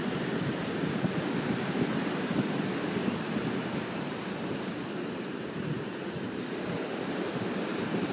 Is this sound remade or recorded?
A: remade